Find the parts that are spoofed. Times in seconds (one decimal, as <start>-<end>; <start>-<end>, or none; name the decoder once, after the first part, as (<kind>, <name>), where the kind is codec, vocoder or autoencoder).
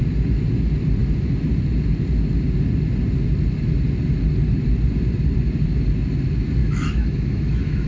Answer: 6.6-7.9 (autoencoder, DAC-VAE)